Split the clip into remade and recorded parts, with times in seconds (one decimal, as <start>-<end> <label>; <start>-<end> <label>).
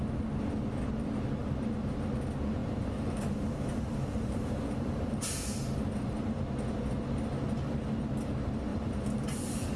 0.0-2.6 recorded; 2.6-6.4 remade; 6.4-8.7 recorded; 8.7-9.8 remade